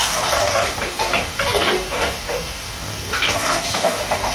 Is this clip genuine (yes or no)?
no